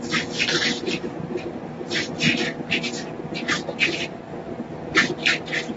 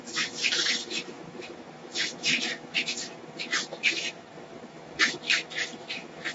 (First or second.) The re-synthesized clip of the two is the second